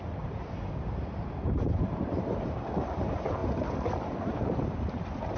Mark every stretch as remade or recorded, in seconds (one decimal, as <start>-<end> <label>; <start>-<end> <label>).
0.0-5.4 remade